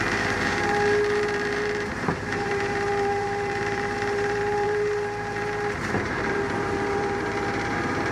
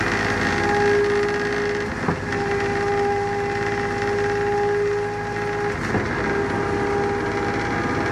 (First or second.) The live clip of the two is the second